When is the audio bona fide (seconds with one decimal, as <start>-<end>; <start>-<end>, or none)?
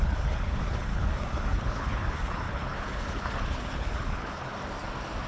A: 4.5-5.3